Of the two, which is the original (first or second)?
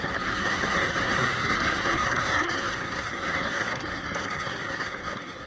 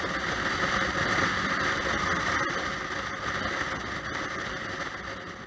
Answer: second